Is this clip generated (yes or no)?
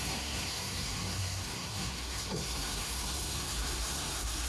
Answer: yes